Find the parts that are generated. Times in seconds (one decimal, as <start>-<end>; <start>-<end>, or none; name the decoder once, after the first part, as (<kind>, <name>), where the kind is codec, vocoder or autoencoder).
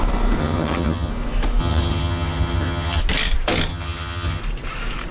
0.4-1.1 (vocoder, HiFi-GAN); 1.6-3.0; 3.7-4.4